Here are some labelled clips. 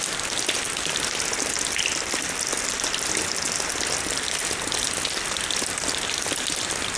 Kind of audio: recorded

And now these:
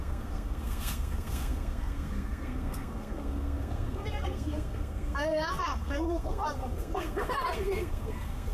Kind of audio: remade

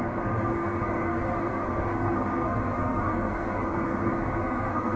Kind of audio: remade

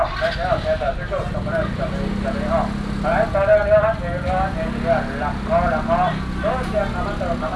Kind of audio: recorded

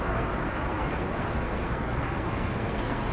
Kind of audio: remade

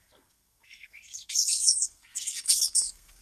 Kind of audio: remade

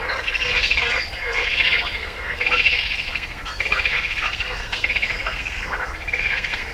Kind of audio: remade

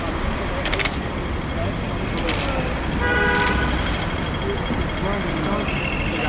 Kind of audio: recorded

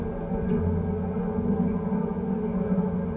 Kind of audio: recorded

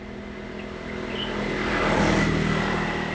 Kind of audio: recorded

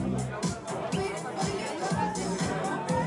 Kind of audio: recorded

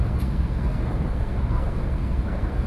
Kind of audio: remade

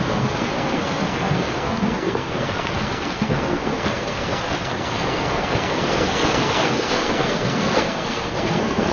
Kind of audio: remade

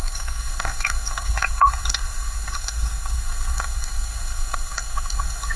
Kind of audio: remade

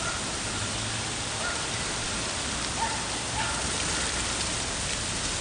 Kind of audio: recorded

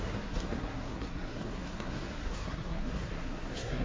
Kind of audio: remade